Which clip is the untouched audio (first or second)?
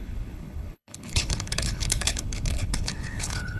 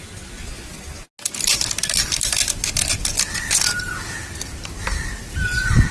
second